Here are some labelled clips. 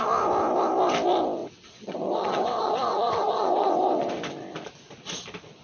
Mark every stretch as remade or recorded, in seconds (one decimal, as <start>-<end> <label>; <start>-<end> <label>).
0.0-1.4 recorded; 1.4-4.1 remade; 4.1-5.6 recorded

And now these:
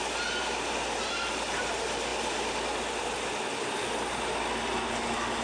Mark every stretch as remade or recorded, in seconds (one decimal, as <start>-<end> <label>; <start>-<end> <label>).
0.0-5.4 recorded

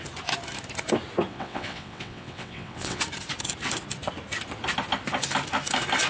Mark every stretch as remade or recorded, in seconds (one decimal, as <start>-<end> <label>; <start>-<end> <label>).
0.0-1.3 recorded; 1.3-3.0 remade; 3.0-6.1 recorded

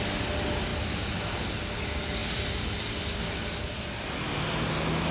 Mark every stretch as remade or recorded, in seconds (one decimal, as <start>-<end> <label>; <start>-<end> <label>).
0.0-5.1 recorded

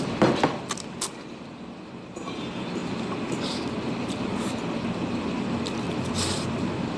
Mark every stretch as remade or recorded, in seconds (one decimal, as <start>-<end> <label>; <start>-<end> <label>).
0.0-7.0 recorded